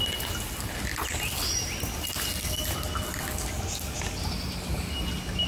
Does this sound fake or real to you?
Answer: real